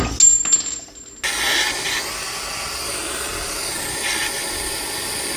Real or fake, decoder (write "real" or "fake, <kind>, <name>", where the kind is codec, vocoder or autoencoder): real